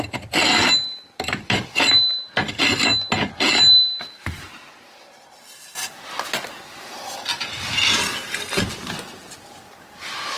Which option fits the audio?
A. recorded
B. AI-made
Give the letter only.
A